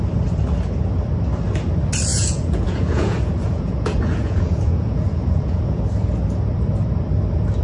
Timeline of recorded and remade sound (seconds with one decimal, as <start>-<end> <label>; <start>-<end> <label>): 0.0-2.1 recorded; 2.1-5.8 remade; 5.8-7.6 recorded